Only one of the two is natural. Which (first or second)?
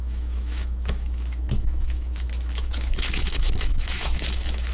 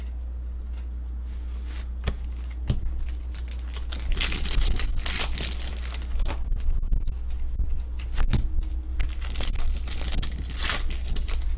second